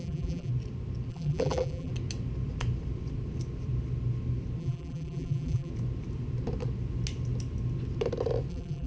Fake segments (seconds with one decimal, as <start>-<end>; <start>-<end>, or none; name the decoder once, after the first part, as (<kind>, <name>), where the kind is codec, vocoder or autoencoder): 0.0-0.5 (vocoder, BigVGAN v2); 1.1-1.9; 4.6-5.7; 8.5-8.9